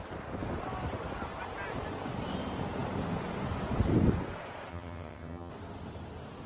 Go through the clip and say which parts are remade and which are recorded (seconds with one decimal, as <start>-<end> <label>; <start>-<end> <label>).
0.0-4.7 recorded; 4.7-5.5 remade; 5.5-6.5 recorded